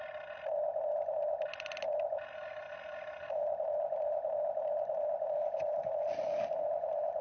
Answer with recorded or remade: recorded